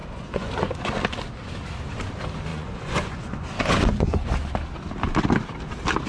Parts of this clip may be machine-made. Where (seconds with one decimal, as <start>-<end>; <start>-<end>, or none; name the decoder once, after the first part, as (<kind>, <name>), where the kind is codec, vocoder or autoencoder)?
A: 0.0-0.9 (vocoder, Vocos); 2.5-4.3